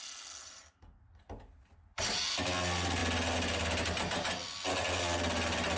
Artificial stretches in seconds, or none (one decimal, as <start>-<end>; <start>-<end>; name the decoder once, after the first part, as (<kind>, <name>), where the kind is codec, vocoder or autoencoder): none

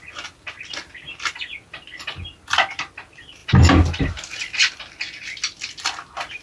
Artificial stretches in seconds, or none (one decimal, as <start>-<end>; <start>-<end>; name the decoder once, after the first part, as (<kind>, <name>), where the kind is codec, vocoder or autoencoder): none

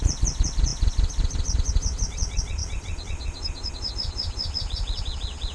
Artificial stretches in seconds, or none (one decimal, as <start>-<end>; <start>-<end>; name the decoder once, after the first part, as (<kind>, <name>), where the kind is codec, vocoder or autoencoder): 0.0-5.5 (vocoder, Vocos)

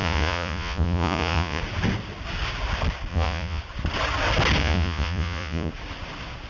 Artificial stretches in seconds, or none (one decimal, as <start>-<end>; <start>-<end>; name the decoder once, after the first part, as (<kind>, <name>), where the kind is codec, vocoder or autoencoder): 0.0-1.6 (vocoder, Vocos); 3.1-3.6; 4.6-5.7

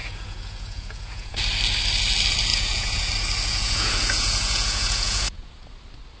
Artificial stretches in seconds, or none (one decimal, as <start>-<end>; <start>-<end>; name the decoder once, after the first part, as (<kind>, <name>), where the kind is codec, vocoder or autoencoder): 0.0-1.4 (vocoder, Vocos); 2.5-3.1; 3.5-5.5

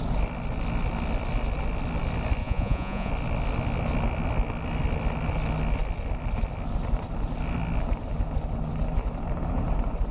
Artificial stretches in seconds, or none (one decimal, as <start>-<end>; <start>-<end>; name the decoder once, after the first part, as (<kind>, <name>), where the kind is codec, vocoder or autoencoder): 2.4-3.1 (vocoder, Vocos)

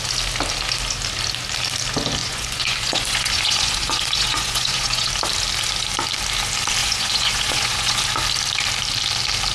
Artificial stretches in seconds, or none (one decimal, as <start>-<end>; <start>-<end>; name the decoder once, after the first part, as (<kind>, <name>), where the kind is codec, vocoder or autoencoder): 2.2-5.1 (vocoder, Vocos); 6.8-8.0